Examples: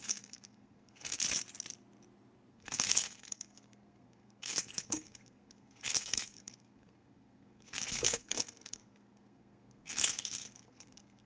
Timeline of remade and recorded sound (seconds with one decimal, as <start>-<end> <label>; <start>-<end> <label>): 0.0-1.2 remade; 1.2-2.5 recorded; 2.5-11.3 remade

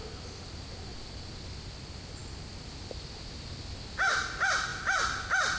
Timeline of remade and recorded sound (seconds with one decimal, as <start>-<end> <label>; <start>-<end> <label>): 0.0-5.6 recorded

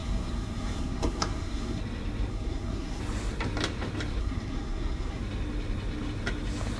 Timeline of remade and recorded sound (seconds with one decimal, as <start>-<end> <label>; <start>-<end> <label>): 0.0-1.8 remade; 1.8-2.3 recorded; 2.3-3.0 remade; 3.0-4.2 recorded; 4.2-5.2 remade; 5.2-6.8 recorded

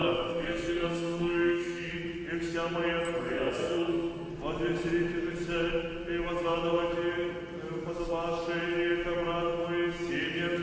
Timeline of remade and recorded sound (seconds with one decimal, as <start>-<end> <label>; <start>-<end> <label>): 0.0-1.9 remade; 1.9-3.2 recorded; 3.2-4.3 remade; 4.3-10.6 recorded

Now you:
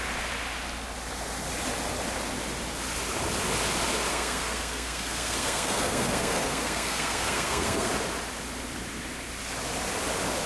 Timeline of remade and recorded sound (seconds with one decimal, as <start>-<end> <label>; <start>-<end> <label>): 0.0-4.1 recorded; 4.1-7.9 remade; 7.9-10.5 recorded